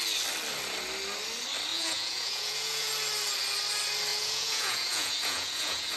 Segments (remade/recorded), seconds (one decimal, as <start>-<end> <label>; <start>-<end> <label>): 0.0-1.7 recorded; 1.7-2.9 remade; 2.9-4.1 recorded; 4.1-6.0 remade